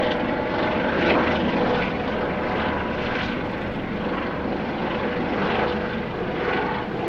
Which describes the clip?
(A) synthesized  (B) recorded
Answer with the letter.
B